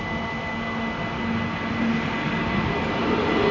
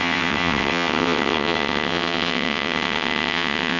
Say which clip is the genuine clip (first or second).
first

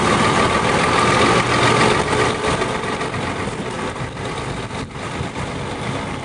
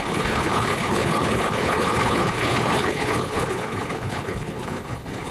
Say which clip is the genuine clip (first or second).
first